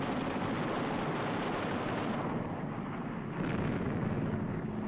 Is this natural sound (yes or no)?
yes